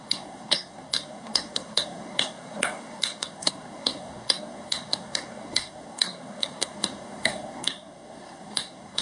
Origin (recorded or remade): remade